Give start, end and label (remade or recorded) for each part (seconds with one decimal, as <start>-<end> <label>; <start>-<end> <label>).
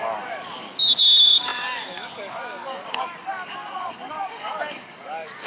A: 0.0-5.5 remade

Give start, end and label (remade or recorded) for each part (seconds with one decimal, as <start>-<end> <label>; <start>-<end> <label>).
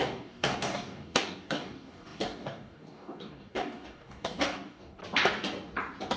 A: 0.0-5.0 remade; 5.0-6.2 recorded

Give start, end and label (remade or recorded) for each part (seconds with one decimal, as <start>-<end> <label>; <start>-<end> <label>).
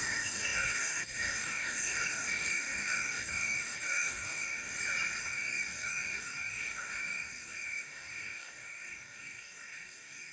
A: 0.0-4.7 remade; 4.7-5.2 recorded; 5.2-10.3 remade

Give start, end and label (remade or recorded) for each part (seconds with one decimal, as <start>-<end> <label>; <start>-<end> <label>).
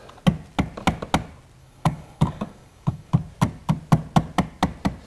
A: 0.0-1.6 recorded; 1.6-3.1 remade; 3.1-5.1 recorded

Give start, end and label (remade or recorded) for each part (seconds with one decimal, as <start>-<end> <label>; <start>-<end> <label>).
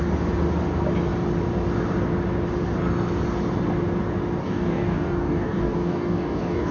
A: 0.0-4.4 recorded; 4.4-6.7 remade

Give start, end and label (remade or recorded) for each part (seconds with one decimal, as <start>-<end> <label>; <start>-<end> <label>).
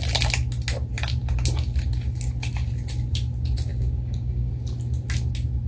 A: 0.0-3.7 recorded; 3.7-4.5 remade; 4.5-5.7 recorded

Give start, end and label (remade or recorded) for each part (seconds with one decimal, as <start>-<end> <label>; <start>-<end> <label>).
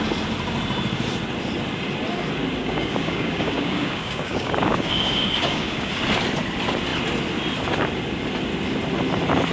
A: 0.0-2.6 recorded; 2.6-5.9 remade; 5.9-9.5 recorded